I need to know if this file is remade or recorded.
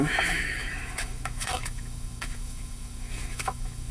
remade